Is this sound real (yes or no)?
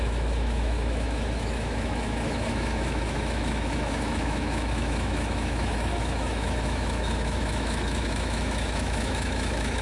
no